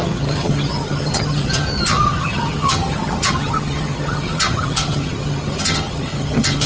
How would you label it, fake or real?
fake